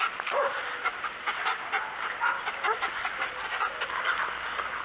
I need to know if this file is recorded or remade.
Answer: recorded